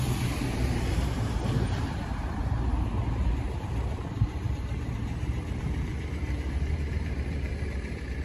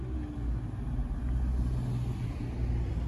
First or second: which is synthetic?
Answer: first